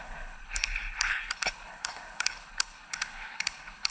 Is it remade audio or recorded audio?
remade